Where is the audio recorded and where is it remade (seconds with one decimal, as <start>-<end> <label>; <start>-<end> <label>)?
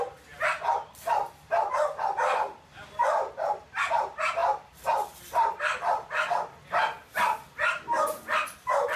0.0-9.0 recorded